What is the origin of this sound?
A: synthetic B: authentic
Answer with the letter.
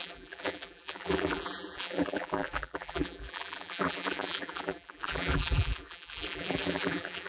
A